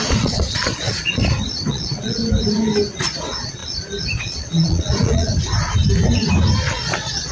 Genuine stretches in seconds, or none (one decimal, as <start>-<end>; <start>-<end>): 1.2-1.7; 2.2-3.2; 3.6-4.2; 5.3-6.7